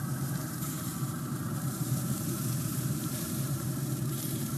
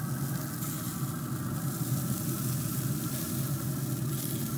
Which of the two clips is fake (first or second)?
first